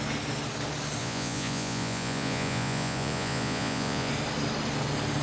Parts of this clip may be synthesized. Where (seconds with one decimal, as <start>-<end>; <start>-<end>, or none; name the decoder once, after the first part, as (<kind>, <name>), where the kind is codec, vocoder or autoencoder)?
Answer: 1.0-4.1 (vocoder, Vocos)